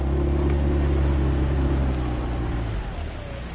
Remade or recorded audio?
recorded